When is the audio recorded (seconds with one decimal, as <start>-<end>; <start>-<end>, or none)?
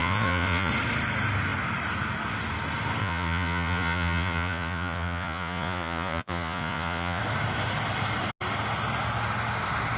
0.7-3.0; 7.2-10.0